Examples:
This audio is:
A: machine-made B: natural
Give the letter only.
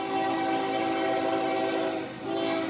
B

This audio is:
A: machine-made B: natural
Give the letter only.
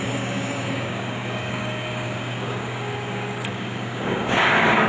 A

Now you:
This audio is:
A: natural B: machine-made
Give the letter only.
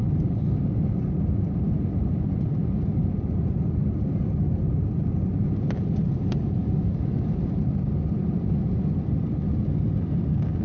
A